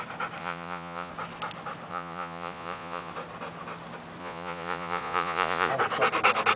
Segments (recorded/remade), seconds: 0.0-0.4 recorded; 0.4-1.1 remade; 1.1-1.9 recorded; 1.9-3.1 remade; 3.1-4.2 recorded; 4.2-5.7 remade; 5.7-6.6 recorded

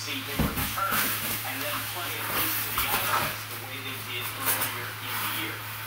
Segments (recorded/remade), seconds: 0.0-0.6 recorded; 0.6-2.1 remade; 2.1-5.9 recorded

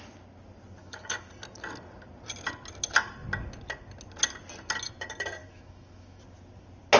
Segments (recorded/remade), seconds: 0.0-0.8 recorded; 0.8-1.3 remade; 1.3-5.4 recorded; 5.4-6.2 remade; 6.2-7.0 recorded

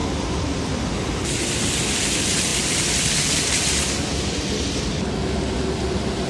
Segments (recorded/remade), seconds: 0.0-6.3 recorded

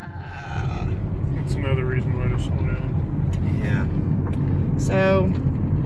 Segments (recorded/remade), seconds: 0.0-1.3 remade; 1.3-5.9 recorded

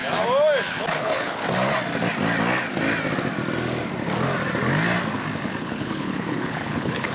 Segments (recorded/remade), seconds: 0.0-0.7 recorded; 0.7-1.4 remade; 1.4-5.6 recorded; 5.6-7.1 remade

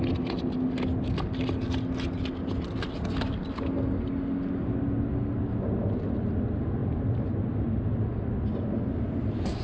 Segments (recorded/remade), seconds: 0.0-9.6 recorded

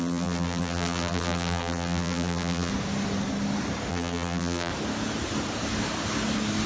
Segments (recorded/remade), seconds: 0.0-2.7 remade; 2.7-3.9 recorded; 3.9-4.7 remade; 4.7-6.7 recorded